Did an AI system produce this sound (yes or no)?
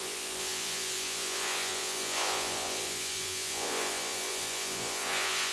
yes